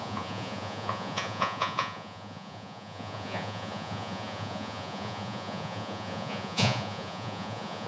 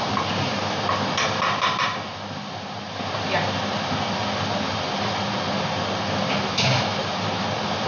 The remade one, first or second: first